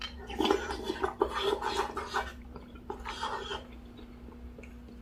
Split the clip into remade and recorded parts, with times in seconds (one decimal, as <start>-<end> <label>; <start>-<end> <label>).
0.0-2.3 recorded; 2.3-3.7 remade; 3.7-5.0 recorded